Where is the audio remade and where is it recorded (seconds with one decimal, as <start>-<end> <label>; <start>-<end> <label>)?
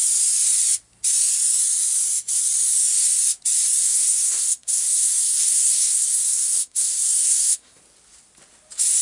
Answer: 0.0-3.8 recorded; 3.8-7.8 remade; 7.8-9.0 recorded